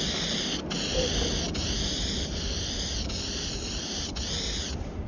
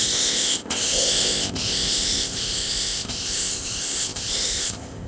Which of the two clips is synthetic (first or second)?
second